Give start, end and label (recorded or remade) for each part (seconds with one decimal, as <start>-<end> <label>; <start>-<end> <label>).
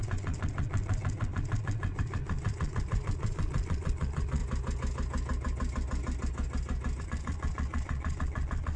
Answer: 0.0-4.4 remade; 4.4-7.0 recorded; 7.0-8.8 remade